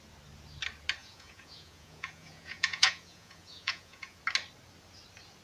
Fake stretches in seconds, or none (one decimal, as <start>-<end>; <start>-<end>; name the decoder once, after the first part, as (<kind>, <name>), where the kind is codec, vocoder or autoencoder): 1.0-4.2 (vocoder, Vocos)